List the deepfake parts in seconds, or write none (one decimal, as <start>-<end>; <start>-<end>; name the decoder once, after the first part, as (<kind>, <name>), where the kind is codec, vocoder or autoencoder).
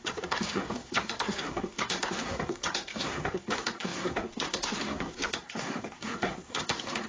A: 0.0-7.1 (codec, SNAC)